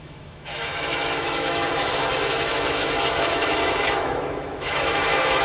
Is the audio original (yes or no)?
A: no